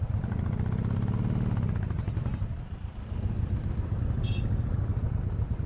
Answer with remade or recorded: recorded